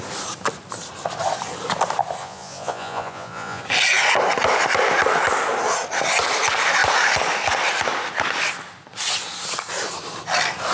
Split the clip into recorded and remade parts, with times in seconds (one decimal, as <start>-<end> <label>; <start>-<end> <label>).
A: 0.0-2.2 recorded; 2.2-3.6 remade; 3.6-10.7 recorded